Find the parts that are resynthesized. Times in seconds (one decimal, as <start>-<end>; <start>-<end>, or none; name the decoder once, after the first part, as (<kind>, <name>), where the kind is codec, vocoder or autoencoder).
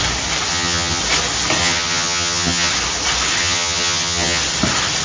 0.5-1.0 (vocoder, HiFi-GAN); 1.6-2.7; 3.4-4.4